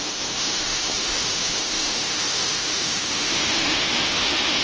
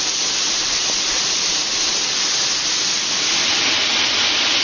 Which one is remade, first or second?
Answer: first